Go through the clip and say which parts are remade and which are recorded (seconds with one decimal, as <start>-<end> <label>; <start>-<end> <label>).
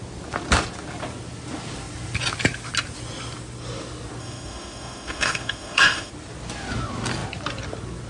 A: 0.0-4.2 recorded; 4.2-6.1 remade; 6.1-8.1 recorded